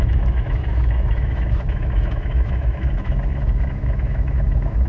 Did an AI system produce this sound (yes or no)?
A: yes